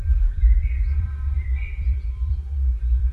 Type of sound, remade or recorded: remade